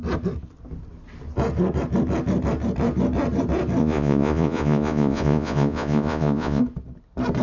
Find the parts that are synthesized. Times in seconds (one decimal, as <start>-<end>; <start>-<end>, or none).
3.8-6.6